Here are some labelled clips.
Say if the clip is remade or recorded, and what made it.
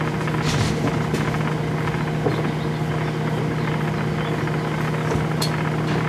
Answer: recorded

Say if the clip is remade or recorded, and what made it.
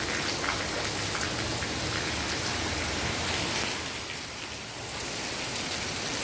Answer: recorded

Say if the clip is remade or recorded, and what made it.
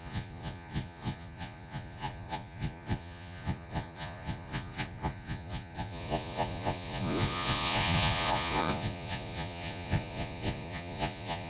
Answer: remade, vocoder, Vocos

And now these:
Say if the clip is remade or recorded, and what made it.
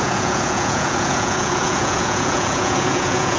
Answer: remade, vocoder, Vocos